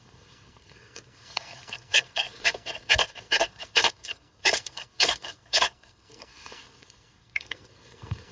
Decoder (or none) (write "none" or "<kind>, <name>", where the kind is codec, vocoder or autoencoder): codec, SNAC